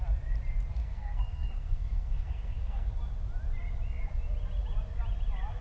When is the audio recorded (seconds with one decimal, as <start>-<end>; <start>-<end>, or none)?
0.0-0.8; 2.9-5.6